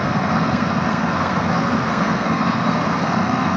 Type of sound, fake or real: fake